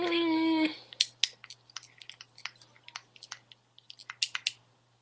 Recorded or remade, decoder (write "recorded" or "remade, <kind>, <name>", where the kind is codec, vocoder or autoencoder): recorded